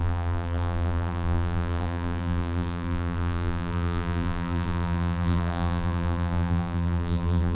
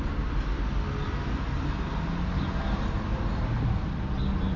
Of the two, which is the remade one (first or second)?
first